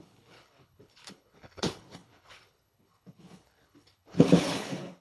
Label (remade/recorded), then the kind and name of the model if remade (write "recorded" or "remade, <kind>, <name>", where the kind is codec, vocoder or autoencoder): remade, codec, HILCodec